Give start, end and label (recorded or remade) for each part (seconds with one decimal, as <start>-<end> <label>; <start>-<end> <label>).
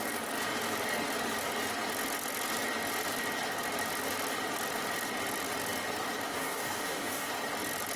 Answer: 0.0-6.3 recorded; 6.3-7.3 remade; 7.3-8.0 recorded